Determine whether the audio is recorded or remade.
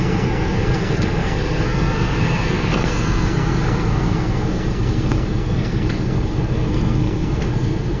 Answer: remade